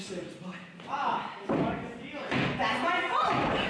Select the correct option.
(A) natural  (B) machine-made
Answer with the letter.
A